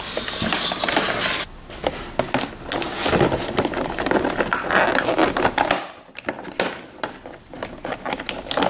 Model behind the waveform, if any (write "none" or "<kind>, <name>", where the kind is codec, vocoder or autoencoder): none